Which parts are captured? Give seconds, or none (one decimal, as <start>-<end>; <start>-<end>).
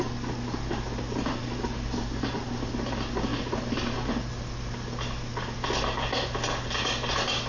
0.0-7.5